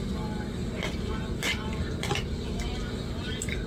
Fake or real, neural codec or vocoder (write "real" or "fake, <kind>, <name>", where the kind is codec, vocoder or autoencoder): real